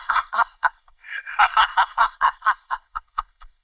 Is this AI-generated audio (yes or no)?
yes